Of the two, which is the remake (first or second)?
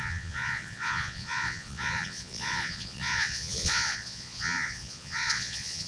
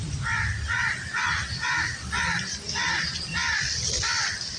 first